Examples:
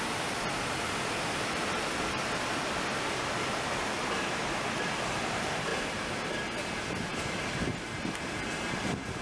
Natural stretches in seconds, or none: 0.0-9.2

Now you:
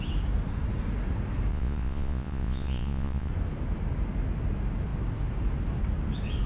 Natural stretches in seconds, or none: 0.0-1.5; 3.3-6.5

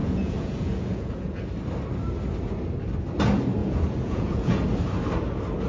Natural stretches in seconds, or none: 1.4-3.6; 4.6-5.7

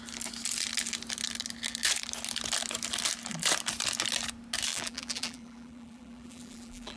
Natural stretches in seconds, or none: 0.0-4.7

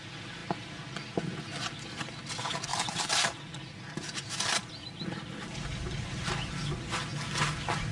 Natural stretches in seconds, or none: 0.0-7.9